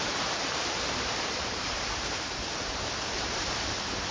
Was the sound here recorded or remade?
remade